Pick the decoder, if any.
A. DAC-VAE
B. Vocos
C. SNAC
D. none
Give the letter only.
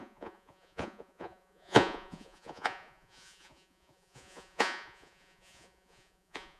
B